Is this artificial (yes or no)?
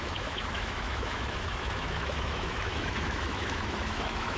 yes